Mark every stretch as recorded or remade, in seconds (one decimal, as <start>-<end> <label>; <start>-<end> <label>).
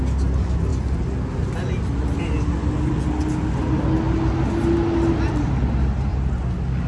0.0-6.9 recorded